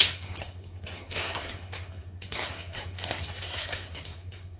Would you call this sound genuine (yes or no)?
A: no